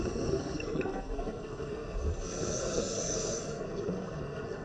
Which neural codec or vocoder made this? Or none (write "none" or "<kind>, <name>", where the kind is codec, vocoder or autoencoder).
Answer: codec, SNAC